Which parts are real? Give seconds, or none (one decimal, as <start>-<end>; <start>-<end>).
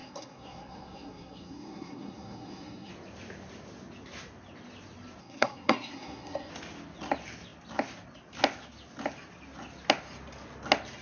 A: 2.9-5.2; 6.5-11.0